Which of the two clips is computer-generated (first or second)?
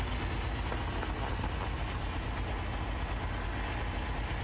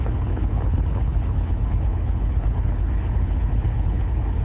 second